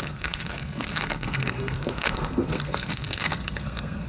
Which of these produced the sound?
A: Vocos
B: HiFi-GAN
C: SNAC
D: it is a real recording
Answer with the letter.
C